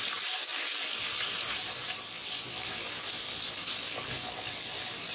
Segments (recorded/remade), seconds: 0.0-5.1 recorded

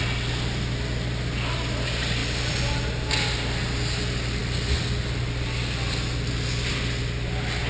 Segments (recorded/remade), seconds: 0.0-7.7 recorded

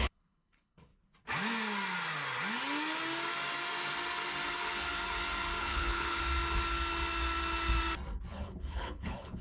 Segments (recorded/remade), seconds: 0.0-0.9 remade; 0.9-5.6 recorded; 5.6-6.2 remade; 6.2-8.3 recorded; 8.3-9.4 remade